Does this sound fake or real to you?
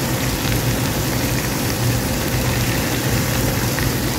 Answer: fake